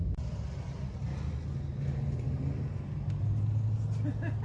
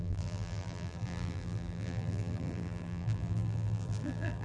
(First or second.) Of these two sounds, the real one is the first